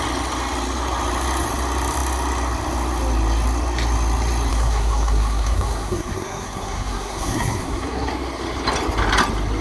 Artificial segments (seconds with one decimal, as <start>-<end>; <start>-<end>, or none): 4.5-8.1